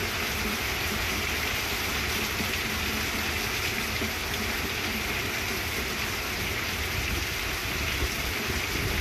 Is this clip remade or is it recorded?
recorded